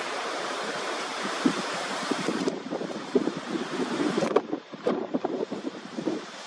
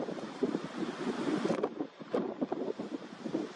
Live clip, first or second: second